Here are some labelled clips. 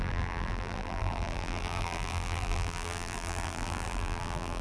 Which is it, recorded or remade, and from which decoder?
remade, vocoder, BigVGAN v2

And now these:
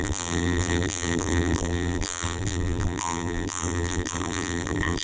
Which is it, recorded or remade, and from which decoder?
remade, vocoder, BigVGAN v2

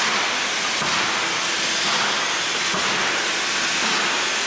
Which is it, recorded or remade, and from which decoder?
recorded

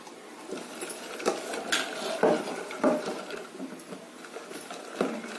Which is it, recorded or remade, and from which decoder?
recorded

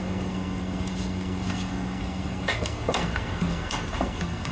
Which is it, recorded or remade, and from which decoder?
remade, codec, SNAC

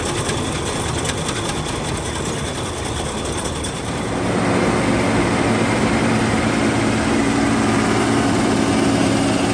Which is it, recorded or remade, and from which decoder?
recorded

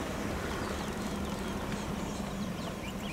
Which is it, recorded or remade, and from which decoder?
remade, vocoder, BigVGAN v2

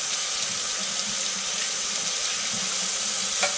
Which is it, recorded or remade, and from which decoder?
recorded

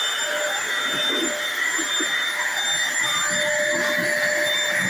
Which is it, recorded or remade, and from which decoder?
recorded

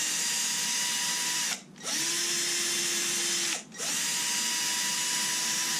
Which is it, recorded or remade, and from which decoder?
recorded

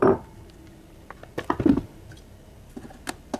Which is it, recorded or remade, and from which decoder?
recorded